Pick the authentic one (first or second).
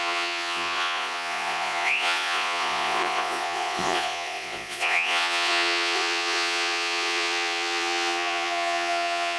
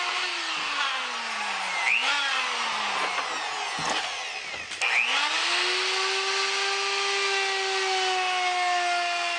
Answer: second